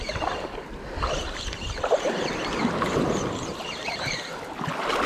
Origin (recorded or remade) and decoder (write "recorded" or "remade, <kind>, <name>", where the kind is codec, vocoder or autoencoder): recorded